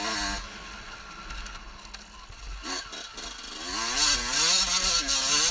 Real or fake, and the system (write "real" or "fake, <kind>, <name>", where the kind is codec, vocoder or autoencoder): real